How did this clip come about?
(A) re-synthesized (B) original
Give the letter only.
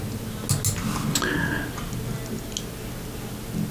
B